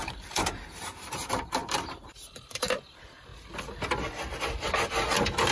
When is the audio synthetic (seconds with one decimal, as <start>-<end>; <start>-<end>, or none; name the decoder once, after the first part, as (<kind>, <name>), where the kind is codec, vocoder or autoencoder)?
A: 0.0-3.3 (vocoder, BigVGAN v2)